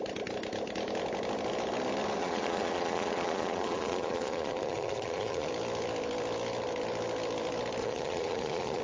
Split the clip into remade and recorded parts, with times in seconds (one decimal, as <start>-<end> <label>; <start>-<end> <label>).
0.0-2.2 recorded; 2.2-5.5 remade; 5.5-7.8 recorded; 7.8-8.8 remade